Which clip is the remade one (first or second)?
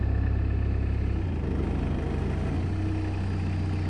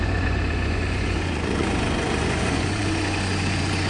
second